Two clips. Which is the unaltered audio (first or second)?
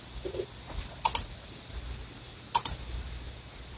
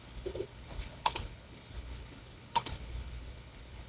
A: first